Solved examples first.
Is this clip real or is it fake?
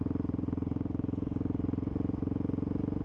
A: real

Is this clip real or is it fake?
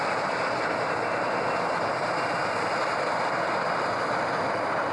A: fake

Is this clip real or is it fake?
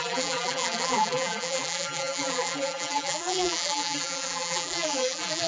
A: fake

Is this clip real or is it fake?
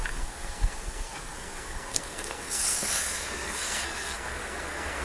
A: fake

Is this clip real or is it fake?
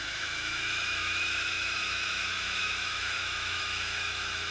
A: fake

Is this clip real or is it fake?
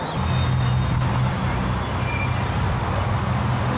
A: real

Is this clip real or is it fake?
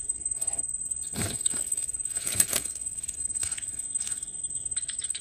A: fake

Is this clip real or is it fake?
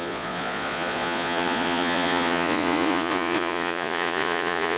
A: fake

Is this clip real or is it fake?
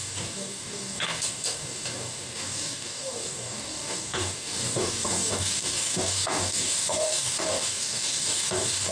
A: fake